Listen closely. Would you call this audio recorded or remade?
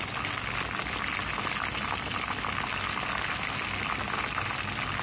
recorded